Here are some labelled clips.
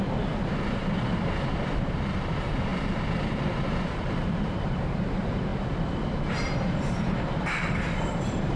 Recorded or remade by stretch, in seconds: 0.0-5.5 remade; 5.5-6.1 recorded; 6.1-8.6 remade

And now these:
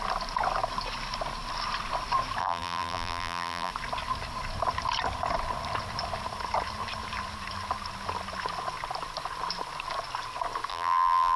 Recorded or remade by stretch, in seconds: 0.0-2.4 recorded; 2.4-3.7 remade; 3.7-10.7 recorded; 10.7-11.4 remade

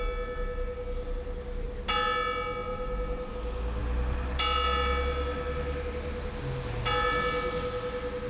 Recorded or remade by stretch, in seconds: 0.0-2.7 recorded; 2.7-3.3 remade; 3.3-8.3 recorded